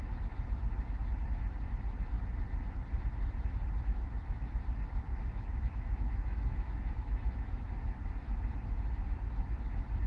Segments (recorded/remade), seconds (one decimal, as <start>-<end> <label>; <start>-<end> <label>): 0.0-3.9 recorded; 3.9-4.5 remade; 4.5-5.1 recorded; 5.1-7.7 remade; 7.7-10.1 recorded